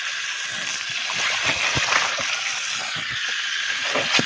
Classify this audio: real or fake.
real